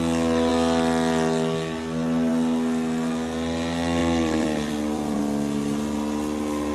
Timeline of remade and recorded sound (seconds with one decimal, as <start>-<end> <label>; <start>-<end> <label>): 0.0-4.0 recorded; 4.0-5.2 remade; 5.2-6.7 recorded